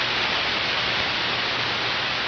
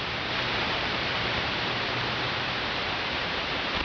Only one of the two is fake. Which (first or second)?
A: second